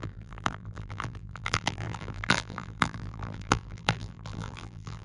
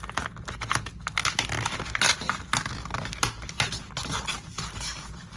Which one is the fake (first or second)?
first